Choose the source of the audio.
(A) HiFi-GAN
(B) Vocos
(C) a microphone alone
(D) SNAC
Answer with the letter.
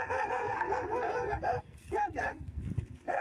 D